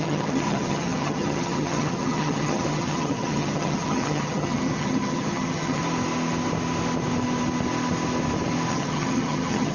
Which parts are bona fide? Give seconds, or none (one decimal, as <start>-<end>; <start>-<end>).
5.8-8.7